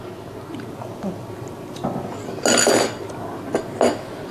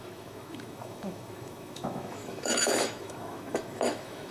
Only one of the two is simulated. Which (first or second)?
second